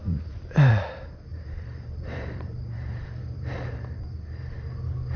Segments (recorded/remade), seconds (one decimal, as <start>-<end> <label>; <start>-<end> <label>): 0.0-0.7 remade; 0.7-1.3 recorded; 1.3-4.0 remade; 4.0-5.2 recorded